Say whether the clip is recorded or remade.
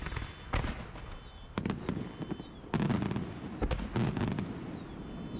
recorded